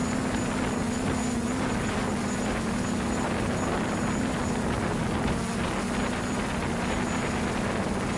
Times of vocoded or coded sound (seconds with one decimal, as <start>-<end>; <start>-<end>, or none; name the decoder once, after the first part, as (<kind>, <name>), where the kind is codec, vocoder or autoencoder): none